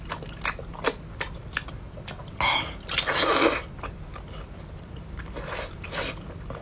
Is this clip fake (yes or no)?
no